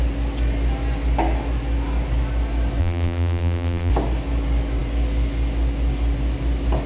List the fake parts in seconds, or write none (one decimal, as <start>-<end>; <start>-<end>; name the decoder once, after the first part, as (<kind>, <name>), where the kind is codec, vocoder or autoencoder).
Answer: 2.8-3.9 (vocoder, BigVGAN v2)